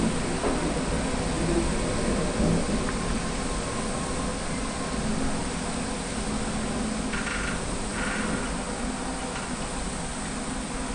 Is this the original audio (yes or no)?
yes